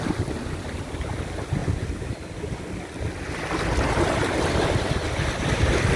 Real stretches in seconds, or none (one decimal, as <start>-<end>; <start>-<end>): 0.0-6.0